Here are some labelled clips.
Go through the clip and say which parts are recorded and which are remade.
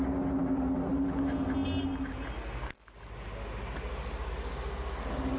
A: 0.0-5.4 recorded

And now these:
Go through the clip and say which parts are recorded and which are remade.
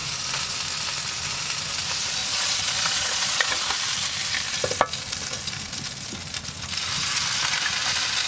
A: 0.0-2.2 recorded; 2.2-3.7 remade; 3.7-8.3 recorded